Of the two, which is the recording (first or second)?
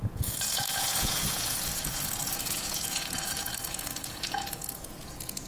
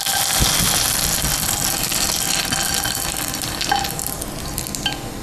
second